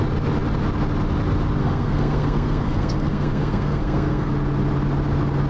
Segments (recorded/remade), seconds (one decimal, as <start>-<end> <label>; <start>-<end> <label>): 0.0-1.6 recorded; 1.6-4.3 remade; 4.3-5.5 recorded